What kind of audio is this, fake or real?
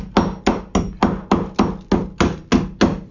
real